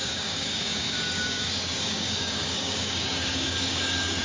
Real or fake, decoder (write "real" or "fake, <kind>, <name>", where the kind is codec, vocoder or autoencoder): fake, codec, DAC